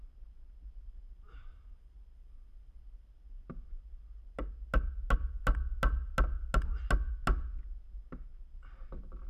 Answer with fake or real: real